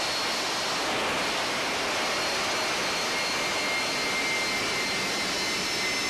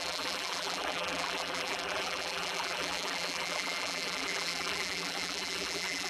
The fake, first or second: second